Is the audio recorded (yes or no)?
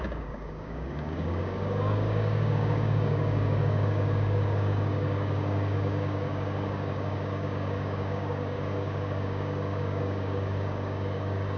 no